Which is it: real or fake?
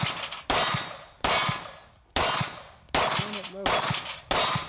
real